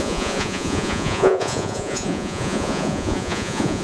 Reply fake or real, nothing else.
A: fake